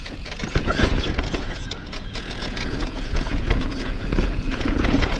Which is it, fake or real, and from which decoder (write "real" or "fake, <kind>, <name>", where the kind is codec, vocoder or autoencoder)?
fake, vocoder, Vocos